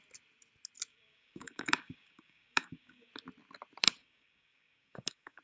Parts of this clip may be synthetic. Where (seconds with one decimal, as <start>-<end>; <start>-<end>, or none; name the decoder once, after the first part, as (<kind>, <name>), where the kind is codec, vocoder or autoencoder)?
0.9-3.1 (codec, DAC); 4.0-5.4